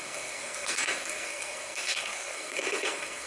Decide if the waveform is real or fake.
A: fake